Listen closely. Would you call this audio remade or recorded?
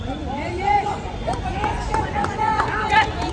remade